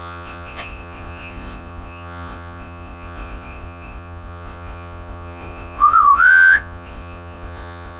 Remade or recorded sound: remade